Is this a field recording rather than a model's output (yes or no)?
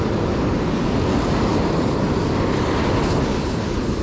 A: yes